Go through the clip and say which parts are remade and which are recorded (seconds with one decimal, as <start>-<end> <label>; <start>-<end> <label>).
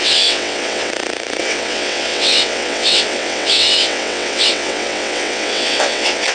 0.0-0.9 remade; 0.9-1.4 recorded; 1.4-6.3 remade